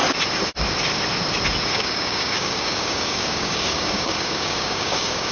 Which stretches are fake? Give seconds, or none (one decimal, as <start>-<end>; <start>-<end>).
1.7-5.3